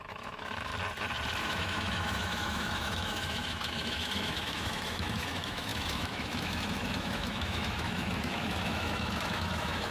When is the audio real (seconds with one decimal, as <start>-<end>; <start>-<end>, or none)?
0.7-1.4